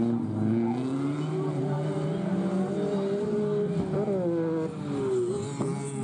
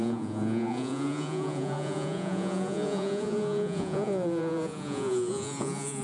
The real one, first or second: first